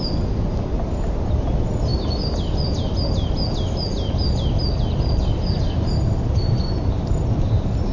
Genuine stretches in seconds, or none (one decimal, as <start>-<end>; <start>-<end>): 0.0-7.9